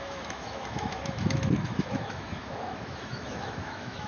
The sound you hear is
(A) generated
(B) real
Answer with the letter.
A